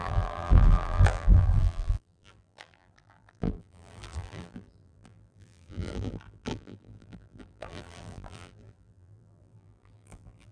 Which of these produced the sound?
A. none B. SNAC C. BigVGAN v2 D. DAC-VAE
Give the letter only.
C